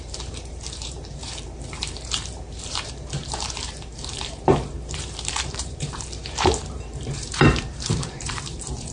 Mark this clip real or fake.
fake